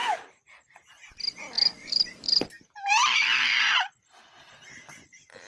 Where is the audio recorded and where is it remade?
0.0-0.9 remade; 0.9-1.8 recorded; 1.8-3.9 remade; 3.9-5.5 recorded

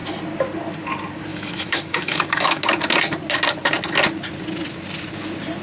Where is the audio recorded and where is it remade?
0.0-1.3 recorded; 1.3-2.6 remade; 2.6-5.6 recorded

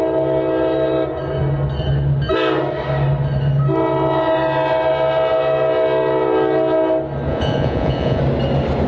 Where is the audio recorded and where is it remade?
0.0-7.3 recorded; 7.3-8.2 remade; 8.2-8.9 recorded

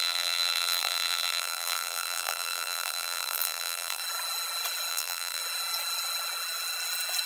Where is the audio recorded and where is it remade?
0.0-4.0 remade; 4.0-4.9 recorded; 4.9-5.4 remade; 5.4-7.3 recorded

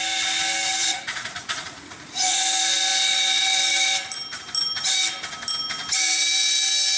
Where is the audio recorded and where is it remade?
0.0-0.8 recorded; 0.8-2.4 remade; 2.4-7.0 recorded